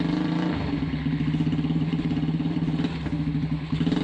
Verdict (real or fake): real